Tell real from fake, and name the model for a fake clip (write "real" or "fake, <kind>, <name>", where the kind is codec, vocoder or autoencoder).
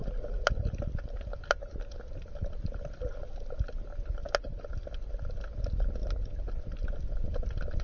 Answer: real